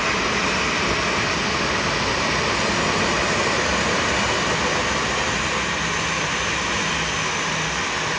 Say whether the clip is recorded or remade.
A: recorded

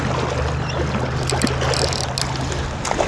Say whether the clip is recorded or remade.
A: recorded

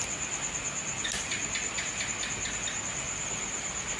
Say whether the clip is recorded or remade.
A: recorded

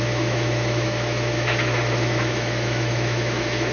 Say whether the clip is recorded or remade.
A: remade